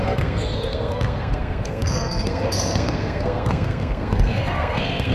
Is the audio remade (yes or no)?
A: yes